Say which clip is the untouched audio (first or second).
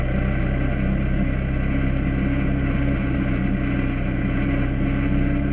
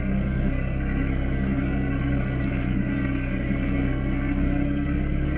first